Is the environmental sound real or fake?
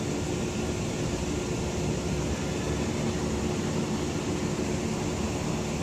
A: real